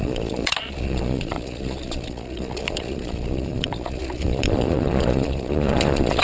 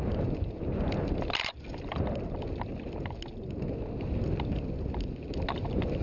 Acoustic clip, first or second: second